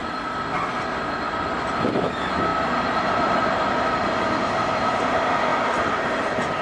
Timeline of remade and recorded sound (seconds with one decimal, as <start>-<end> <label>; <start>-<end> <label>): 0.0-0.7 remade; 0.7-2.5 recorded; 2.5-5.0 remade; 5.0-6.6 recorded